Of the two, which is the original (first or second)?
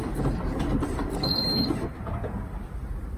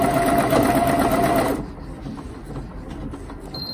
second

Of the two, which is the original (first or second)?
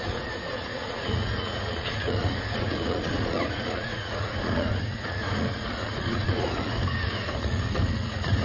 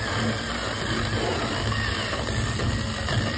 second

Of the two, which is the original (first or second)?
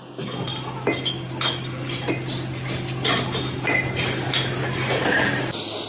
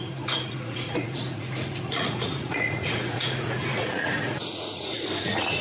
first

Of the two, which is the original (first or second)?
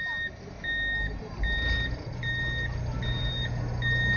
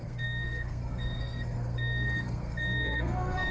first